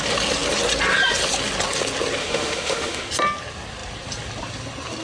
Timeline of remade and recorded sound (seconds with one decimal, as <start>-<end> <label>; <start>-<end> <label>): 0.0-2.2 recorded; 2.2-3.1 remade; 3.1-5.0 recorded